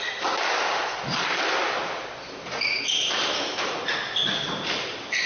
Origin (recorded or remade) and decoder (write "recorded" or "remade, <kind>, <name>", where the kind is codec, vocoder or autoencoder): recorded